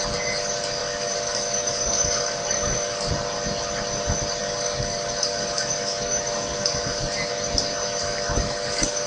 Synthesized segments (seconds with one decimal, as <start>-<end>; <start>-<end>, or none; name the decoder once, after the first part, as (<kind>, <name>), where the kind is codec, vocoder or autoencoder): 0.8-3.1 (codec, DAC); 4.4-7.3; 8.0-9.1